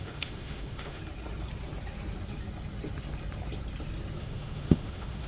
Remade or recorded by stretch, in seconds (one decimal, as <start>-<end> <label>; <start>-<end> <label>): 0.0-1.0 remade; 1.0-4.2 recorded; 4.2-5.3 remade